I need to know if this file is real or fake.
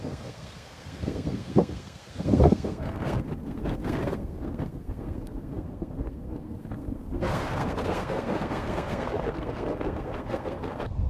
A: fake